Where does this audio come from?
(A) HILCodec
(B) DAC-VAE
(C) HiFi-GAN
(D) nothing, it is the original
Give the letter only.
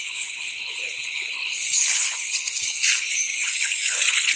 A